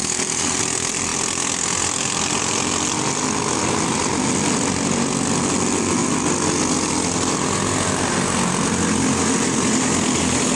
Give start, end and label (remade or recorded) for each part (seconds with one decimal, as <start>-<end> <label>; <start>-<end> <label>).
0.0-0.6 remade; 0.6-10.6 recorded